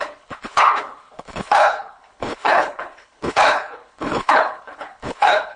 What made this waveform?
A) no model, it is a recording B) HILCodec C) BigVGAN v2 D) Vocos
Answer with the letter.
B